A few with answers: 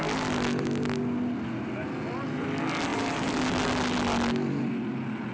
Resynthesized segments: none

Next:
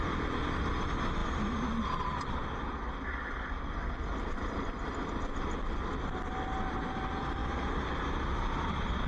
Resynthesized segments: none

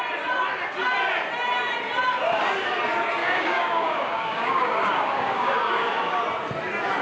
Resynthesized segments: 3.2-6.2 (codec, DAC)

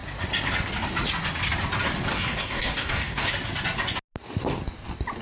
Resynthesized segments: 2.1-3.3 (codec, DAC)

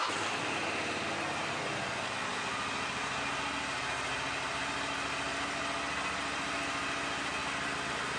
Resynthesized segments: none

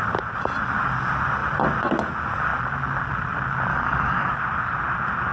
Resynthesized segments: 3.7-4.3 (codec, DAC)

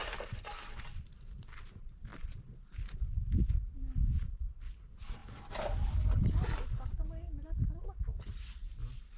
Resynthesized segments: none

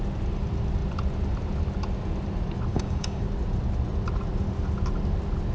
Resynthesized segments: 2.7-3.2 (codec, DAC)